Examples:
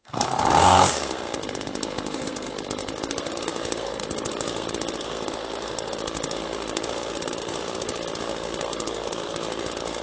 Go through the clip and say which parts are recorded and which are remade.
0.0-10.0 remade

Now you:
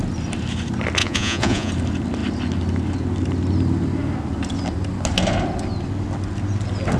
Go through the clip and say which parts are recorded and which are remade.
0.0-1.0 recorded; 1.0-1.7 remade; 1.7-7.0 recorded